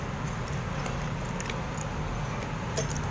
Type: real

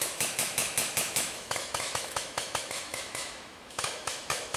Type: fake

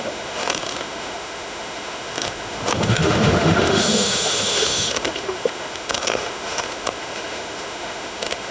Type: fake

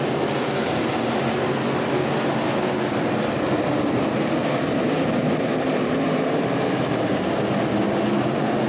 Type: real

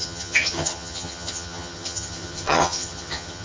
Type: fake